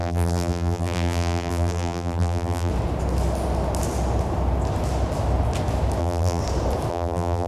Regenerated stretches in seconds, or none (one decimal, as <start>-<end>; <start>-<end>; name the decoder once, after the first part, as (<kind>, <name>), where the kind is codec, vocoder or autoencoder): 0.0-2.7 (vocoder, BigVGAN v2); 6.0-6.4; 6.9-7.5